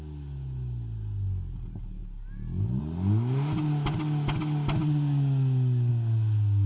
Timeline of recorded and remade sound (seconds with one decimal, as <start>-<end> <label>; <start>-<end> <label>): 0.0-6.7 recorded